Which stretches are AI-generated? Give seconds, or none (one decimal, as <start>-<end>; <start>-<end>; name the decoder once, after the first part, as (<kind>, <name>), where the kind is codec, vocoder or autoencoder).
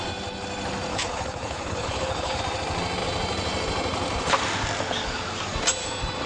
0.9-2.4 (codec, HILCodec)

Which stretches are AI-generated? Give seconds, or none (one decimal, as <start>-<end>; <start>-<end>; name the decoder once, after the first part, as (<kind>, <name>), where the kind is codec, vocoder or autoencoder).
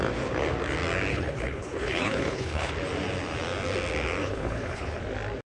1.1-2.7 (codec, HILCodec); 4.2-5.0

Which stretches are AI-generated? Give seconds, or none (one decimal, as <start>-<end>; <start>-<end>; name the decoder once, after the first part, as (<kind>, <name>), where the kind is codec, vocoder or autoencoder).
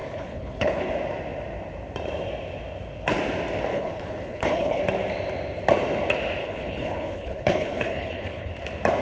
0.0-0.9 (codec, HILCodec); 3.7-4.8; 6.4-8.5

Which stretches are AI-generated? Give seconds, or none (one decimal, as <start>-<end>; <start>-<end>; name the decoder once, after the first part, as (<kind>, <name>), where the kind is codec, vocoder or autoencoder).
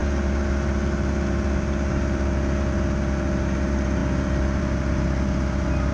none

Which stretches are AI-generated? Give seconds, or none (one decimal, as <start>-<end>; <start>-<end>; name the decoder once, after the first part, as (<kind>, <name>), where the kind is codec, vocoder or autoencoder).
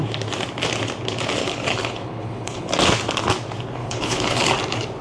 1.4-2.7 (codec, HILCodec); 3.8-4.5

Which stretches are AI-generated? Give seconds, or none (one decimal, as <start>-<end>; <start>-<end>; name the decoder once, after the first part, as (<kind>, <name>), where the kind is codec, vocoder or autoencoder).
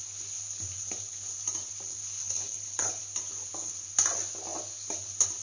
2.2-3.0 (codec, HILCodec)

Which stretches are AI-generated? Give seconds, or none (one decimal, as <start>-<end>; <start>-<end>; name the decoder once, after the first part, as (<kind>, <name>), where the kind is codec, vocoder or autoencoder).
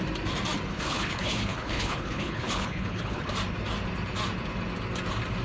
0.7-3.3 (codec, HILCodec)